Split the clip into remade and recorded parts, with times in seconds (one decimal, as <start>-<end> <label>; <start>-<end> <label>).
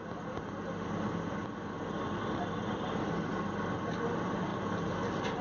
0.0-1.4 recorded; 1.4-4.5 remade; 4.5-5.4 recorded